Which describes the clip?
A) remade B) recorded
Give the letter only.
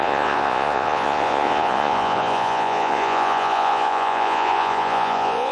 A